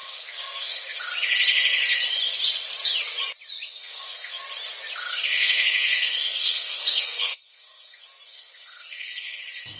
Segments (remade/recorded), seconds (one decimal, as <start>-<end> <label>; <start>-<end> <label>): 0.0-1.0 remade; 1.0-3.7 recorded; 3.7-4.4 remade; 4.4-5.1 recorded; 5.1-9.4 remade; 9.4-9.8 recorded